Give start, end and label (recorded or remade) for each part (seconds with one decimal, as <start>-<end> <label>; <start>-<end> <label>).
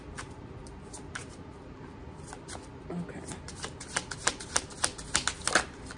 0.0-1.2 recorded; 1.2-4.3 remade; 4.3-6.0 recorded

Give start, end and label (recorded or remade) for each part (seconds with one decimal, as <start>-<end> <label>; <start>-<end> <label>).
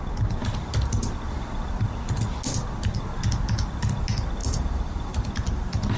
0.0-4.4 recorded; 4.4-5.3 remade; 5.3-6.0 recorded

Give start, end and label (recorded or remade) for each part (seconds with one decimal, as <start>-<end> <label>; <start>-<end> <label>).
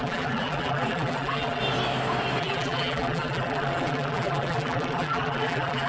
0.0-1.6 remade; 1.6-2.4 recorded; 2.4-5.9 remade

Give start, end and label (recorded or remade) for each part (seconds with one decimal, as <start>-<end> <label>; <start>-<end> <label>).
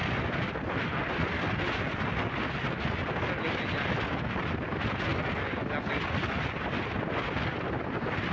0.0-1.8 remade; 1.8-8.3 recorded